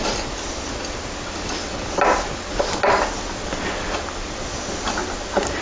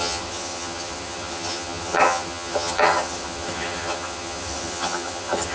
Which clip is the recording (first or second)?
first